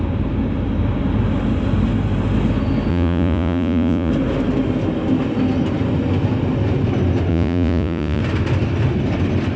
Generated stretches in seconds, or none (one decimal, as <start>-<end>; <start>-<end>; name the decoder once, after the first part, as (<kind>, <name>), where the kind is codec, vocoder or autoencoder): 2.9-4.1 (vocoder, Vocos); 7.3-8.2